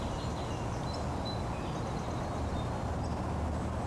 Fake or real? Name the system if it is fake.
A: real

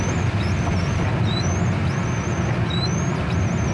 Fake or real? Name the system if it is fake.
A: real